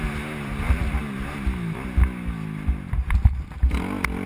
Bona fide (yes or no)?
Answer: yes